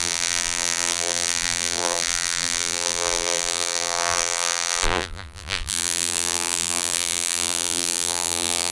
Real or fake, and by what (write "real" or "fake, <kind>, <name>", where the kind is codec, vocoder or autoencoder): fake, vocoder, BigVGAN v2